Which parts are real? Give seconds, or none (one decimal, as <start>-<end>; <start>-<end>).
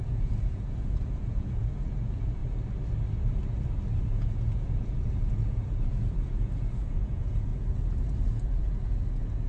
2.4-4.0; 7.5-8.6